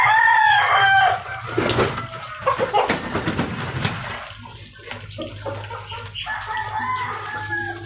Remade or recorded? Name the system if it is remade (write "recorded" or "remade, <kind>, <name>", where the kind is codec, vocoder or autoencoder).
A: recorded